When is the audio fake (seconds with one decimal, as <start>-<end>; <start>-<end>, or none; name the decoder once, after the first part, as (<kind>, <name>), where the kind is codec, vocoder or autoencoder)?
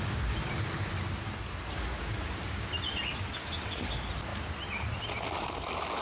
none